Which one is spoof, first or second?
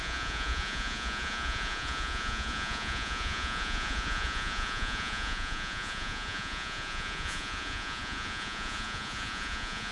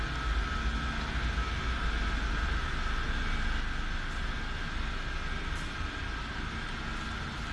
first